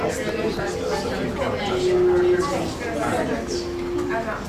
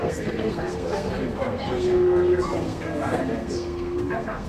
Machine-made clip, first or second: second